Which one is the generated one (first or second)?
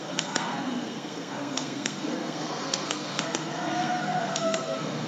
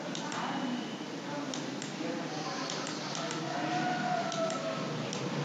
first